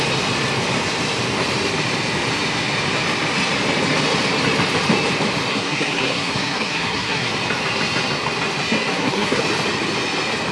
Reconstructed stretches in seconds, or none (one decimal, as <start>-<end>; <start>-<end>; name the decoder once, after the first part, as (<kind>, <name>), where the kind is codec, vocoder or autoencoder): 5.5-7.3 (codec, SNAC); 8.9-9.4